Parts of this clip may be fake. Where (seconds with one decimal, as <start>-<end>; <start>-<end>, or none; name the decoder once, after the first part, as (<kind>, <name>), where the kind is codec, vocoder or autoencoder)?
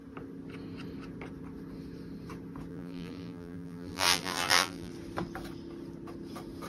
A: 2.7-4.9 (vocoder, BigVGAN v2)